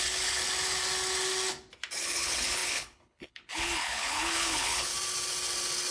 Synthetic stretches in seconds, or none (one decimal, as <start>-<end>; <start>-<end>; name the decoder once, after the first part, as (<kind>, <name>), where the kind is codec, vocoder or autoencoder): 0.0-0.4 (codec, HILCodec); 2.0-4.9